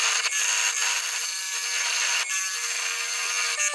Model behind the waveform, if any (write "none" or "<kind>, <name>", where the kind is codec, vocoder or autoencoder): none